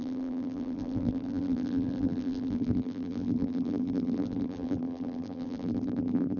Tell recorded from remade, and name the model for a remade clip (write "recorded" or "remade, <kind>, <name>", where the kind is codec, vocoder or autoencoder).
remade, vocoder, BigVGAN v2